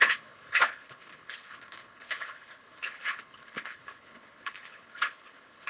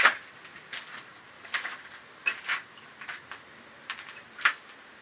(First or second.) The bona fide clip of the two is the second